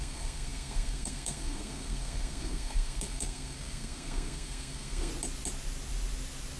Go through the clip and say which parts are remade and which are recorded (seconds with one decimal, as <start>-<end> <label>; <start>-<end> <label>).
0.0-5.1 remade; 5.1-6.6 recorded